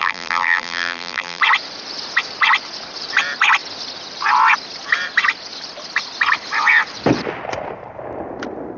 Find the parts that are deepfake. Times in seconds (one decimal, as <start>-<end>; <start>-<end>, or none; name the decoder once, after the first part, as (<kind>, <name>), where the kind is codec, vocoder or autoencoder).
0.0-1.4 (vocoder, BigVGAN v2)

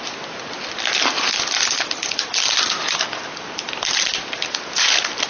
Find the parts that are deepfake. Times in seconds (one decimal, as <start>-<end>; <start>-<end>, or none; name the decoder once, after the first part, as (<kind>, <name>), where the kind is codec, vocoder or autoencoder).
1.3-4.5 (vocoder, BigVGAN v2)

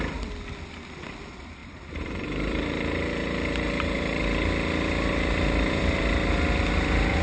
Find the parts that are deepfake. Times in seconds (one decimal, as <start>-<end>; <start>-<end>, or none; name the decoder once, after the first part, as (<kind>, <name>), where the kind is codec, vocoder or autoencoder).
1.6-4.2 (vocoder, BigVGAN v2)

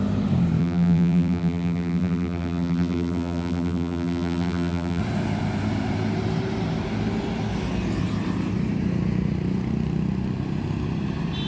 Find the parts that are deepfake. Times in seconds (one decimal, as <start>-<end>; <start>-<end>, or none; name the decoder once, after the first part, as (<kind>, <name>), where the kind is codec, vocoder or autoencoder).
0.6-5.0 (vocoder, BigVGAN v2)

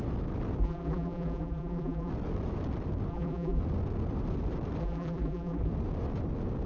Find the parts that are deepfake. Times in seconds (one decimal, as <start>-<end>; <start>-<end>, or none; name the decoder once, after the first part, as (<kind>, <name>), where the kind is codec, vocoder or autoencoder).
0.6-2.1 (vocoder, BigVGAN v2); 3.1-3.6; 4.8-5.7

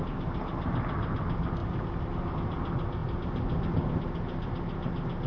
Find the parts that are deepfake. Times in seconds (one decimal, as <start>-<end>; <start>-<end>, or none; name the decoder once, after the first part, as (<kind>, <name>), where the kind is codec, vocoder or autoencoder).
none

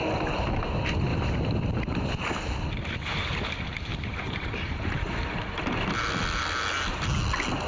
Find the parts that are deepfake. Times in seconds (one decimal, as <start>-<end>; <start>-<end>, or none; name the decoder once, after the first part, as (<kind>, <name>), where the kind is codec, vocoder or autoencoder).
1.1-2.1 (vocoder, BigVGAN v2); 3.9-5.4

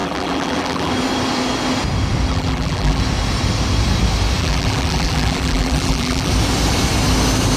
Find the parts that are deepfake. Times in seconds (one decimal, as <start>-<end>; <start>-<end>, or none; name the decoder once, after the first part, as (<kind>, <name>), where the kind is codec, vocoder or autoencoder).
0.0-0.9 (vocoder, BigVGAN v2); 2.3-3.0; 4.4-6.3